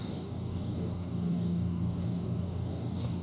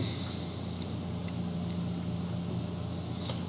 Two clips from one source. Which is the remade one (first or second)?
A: first